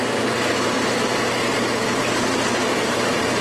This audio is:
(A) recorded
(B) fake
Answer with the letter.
A